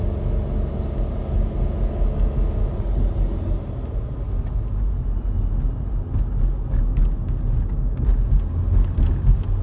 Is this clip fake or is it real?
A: real